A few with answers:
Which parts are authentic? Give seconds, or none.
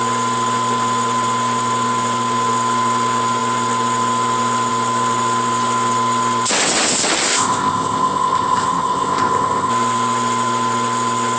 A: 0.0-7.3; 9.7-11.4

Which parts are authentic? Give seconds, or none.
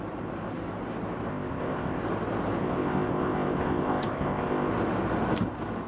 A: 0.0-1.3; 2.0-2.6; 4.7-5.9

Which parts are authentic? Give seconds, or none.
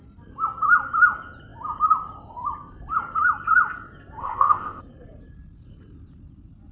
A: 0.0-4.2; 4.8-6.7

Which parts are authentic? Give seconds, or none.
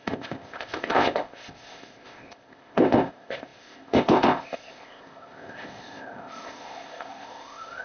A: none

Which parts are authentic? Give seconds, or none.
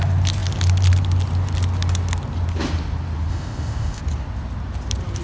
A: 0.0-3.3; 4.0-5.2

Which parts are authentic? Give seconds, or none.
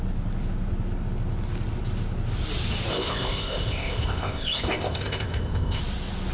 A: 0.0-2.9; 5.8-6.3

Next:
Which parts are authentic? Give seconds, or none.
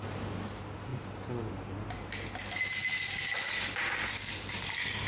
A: 0.0-5.1